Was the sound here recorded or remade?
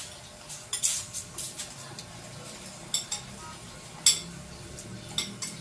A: recorded